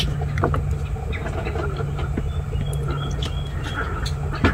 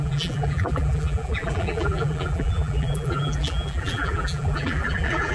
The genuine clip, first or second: first